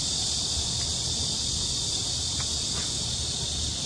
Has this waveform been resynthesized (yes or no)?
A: no